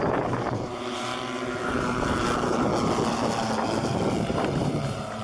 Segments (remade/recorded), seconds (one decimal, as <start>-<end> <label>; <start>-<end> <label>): 0.0-1.1 remade; 1.1-4.2 recorded; 4.2-5.2 remade